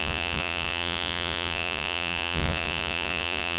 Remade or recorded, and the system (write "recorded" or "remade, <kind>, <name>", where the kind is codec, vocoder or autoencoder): remade, vocoder, Vocos